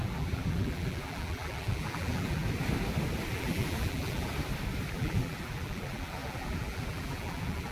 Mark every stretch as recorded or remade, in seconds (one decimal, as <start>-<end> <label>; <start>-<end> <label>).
0.0-2.4 remade; 2.4-3.3 recorded; 3.3-4.3 remade; 4.3-4.9 recorded; 4.9-7.7 remade